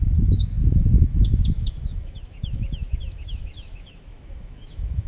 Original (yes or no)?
no